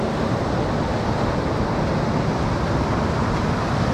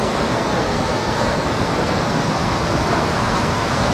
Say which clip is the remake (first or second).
second